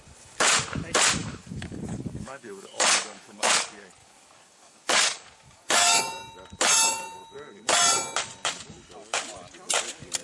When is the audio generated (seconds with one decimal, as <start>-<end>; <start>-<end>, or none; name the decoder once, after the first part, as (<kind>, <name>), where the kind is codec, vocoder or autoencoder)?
1.2-3.5 (codec, DAC); 4.0-6.0